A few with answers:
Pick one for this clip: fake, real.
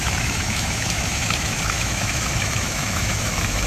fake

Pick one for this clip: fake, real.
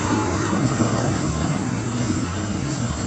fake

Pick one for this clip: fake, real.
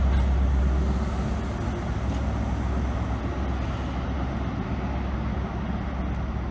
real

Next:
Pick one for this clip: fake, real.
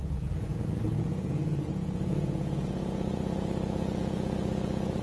fake